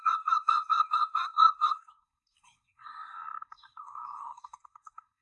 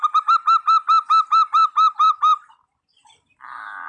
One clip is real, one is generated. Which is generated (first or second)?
first